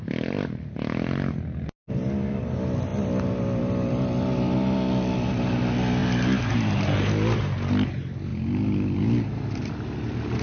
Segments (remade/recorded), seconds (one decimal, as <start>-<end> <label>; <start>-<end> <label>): 0.0-10.4 recorded